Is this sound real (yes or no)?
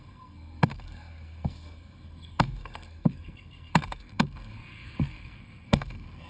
no